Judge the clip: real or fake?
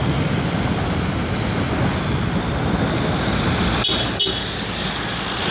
real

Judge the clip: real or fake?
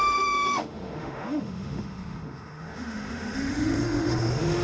fake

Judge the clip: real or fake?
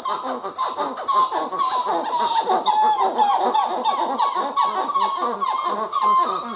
real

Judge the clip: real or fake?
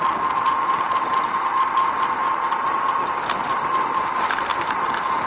real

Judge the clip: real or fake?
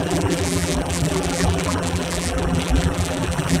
fake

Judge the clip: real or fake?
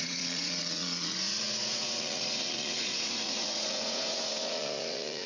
fake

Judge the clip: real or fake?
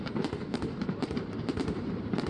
fake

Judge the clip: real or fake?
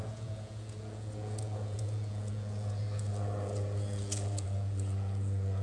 fake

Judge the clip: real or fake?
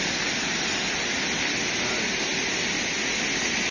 real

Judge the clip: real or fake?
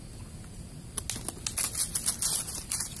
real